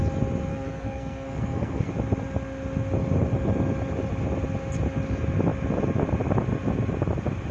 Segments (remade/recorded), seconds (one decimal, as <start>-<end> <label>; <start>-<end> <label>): 0.0-0.5 recorded; 0.5-1.9 remade; 1.9-7.5 recorded